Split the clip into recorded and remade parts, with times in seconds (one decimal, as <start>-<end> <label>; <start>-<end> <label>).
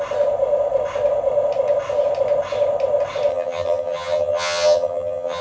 0.0-3.3 recorded; 3.3-5.4 remade